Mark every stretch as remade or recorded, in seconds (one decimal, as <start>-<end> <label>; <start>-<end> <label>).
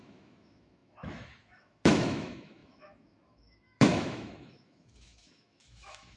0.0-6.2 remade